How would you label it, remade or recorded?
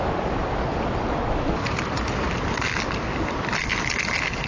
recorded